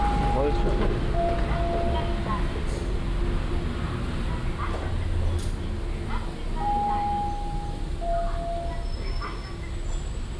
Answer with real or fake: real